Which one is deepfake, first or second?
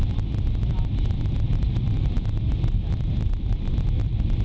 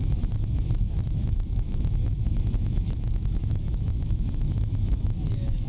second